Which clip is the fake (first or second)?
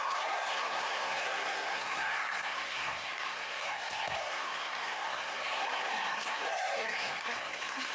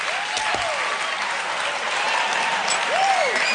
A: first